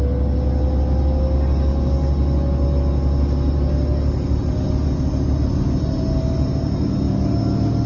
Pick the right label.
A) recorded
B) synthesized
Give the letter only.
A